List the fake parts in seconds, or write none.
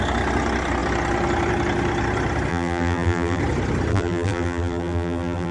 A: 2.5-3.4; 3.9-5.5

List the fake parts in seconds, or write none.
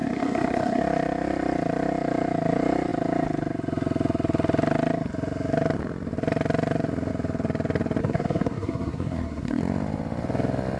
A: 0.0-0.8; 8.0-9.6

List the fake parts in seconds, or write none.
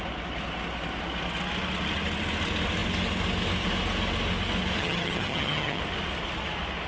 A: 4.8-5.8